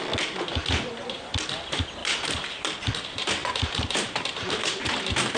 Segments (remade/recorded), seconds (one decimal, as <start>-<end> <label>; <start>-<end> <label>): 0.0-2.0 recorded; 2.0-2.9 remade; 2.9-3.4 recorded; 3.4-4.3 remade; 4.3-5.4 recorded